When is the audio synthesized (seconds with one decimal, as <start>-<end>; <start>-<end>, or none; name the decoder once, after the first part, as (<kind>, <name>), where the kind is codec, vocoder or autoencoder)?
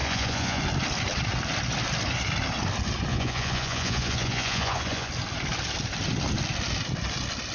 0.0-0.6 (vocoder, Vocos); 3.1-5.1